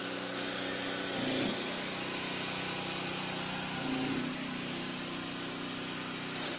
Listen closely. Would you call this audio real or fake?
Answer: real